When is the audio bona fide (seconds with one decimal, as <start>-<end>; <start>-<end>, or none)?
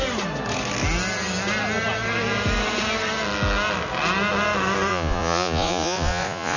0.0-4.9